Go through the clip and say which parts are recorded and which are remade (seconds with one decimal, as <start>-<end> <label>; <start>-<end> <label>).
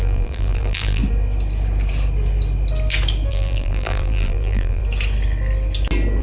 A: 0.0-1.0 remade; 1.0-3.3 recorded; 3.3-4.8 remade; 4.8-6.2 recorded